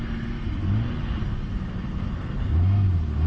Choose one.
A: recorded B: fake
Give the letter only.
A